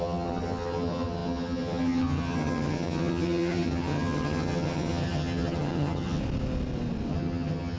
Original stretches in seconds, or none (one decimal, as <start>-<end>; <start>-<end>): 6.2-7.1